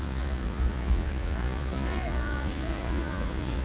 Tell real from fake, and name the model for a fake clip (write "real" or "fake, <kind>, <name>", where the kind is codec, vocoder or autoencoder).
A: fake, vocoder, Vocos